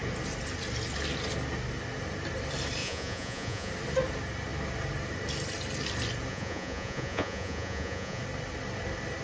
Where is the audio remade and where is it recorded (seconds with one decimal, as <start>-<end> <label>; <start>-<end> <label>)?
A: 0.0-2.8 recorded; 2.8-3.7 remade; 3.7-6.3 recorded; 6.3-8.2 remade; 8.2-9.2 recorded